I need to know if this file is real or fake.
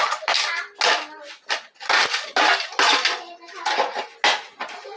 real